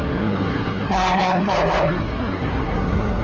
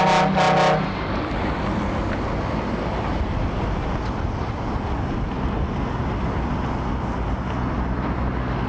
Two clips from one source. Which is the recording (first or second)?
second